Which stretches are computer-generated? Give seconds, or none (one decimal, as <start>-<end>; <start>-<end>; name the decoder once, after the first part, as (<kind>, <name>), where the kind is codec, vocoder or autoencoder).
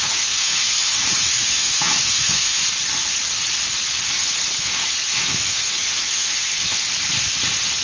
0.0-2.6 (autoencoder, DAC-VAE); 4.6-6.9